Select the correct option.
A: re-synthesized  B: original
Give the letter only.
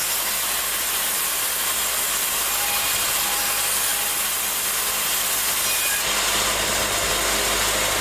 B